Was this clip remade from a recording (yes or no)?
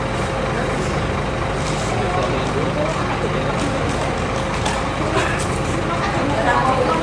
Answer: no